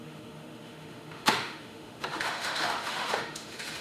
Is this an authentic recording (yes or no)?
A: no